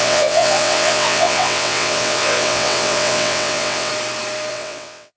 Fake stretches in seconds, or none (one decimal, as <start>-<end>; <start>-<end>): 0.0-3.9; 4.5-5.2